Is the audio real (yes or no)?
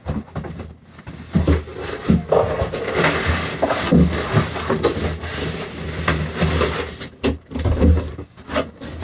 yes